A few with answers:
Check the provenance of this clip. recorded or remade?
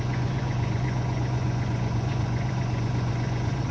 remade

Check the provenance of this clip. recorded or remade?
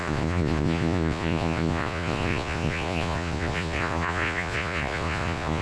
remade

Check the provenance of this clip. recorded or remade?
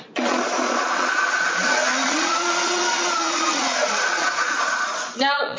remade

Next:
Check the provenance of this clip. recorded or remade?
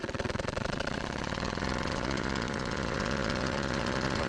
remade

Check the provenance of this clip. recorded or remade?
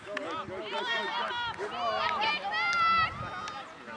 recorded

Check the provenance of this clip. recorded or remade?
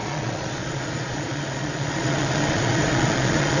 remade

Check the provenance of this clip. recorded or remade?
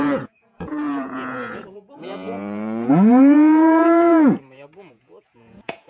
remade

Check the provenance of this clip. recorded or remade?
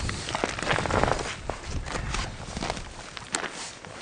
recorded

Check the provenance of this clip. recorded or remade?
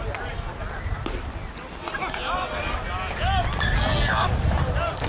recorded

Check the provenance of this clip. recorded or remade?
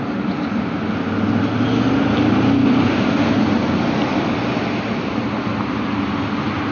recorded